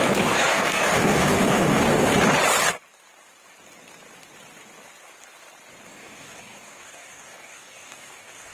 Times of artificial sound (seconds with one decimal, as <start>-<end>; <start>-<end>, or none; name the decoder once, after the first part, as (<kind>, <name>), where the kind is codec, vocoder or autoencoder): 0.0-2.1 (codec, DAC); 5.9-8.5